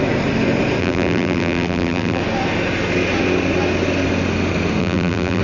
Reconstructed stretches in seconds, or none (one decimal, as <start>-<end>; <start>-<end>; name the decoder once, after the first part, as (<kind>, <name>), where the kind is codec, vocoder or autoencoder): 0.8-2.2 (vocoder, BigVGAN v2); 4.8-5.4